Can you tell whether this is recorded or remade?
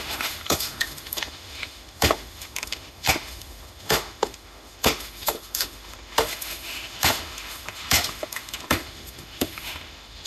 remade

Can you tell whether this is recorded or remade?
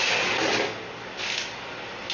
recorded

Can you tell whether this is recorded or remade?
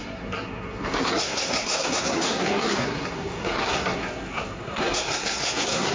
remade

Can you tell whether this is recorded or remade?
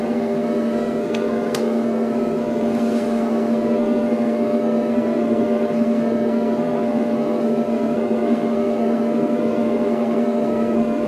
remade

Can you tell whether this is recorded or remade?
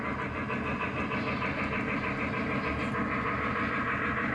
recorded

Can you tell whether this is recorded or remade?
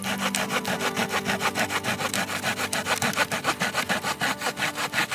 recorded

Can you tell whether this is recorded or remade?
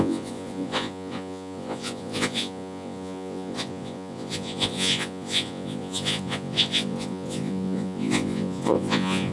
remade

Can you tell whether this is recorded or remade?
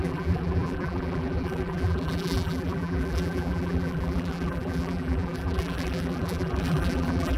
remade